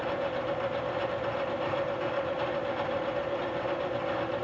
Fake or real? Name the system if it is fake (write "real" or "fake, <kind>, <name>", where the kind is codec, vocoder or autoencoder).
real